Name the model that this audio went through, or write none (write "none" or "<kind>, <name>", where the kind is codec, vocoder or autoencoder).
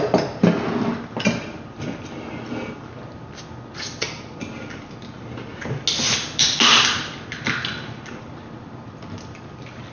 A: none